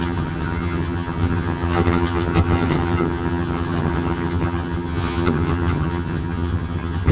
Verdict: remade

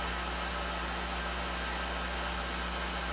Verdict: recorded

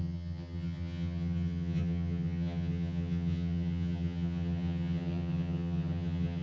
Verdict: remade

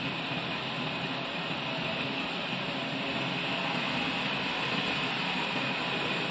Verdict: recorded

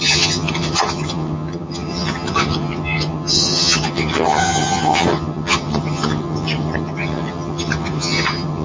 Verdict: remade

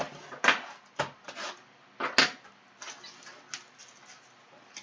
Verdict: recorded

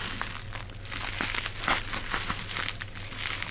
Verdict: recorded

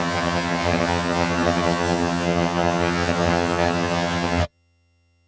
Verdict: remade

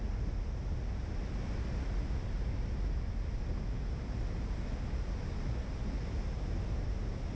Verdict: recorded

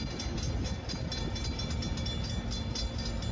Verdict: recorded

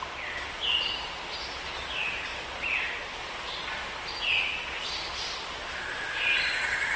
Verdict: recorded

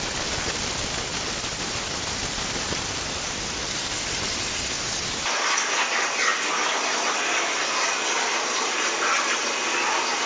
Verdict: recorded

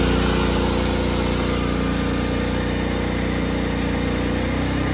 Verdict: recorded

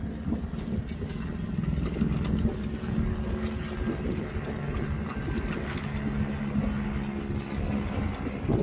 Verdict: recorded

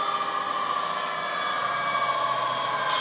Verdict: recorded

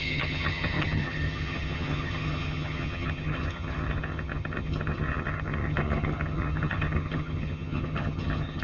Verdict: remade